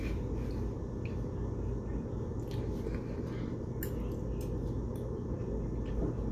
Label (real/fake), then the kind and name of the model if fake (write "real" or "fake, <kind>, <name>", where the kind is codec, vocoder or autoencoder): real